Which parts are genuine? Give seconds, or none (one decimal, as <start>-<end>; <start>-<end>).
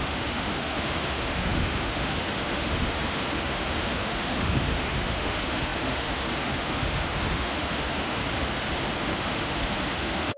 8.2-9.0